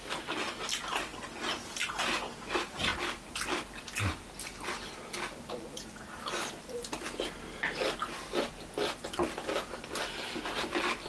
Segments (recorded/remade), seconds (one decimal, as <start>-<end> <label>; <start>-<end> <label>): 0.0-11.1 recorded